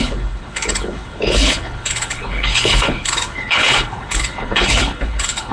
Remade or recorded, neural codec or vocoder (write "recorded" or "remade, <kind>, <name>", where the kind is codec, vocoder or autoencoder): remade, codec, HILCodec